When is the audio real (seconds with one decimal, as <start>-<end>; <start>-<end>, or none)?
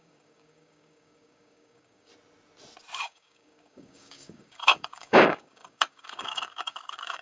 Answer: 2.1-3.0